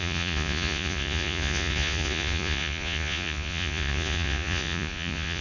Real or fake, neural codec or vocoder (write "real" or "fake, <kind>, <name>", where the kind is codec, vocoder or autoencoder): fake, vocoder, Vocos